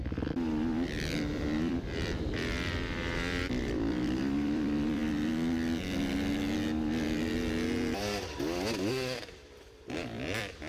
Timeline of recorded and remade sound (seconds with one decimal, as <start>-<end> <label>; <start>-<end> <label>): 0.0-5.0 remade; 5.0-8.9 recorded; 8.9-10.7 remade